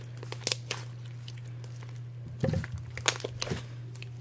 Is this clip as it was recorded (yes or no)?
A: yes